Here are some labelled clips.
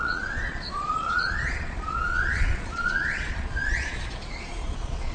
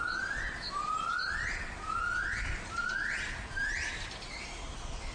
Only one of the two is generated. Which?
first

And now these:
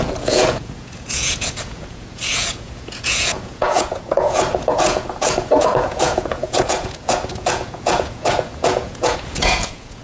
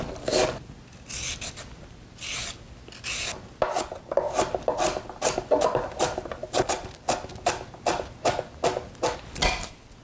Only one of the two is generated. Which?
first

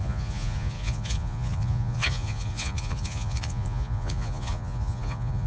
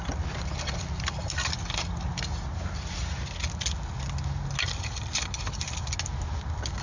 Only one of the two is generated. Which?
first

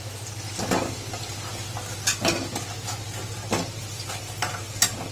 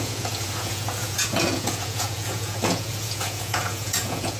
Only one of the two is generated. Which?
second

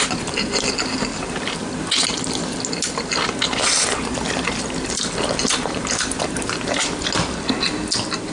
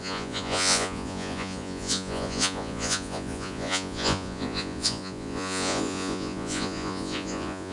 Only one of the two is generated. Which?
second